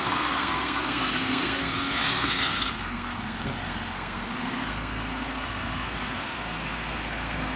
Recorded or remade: remade